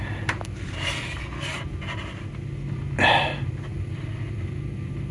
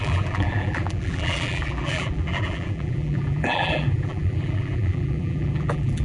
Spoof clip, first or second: second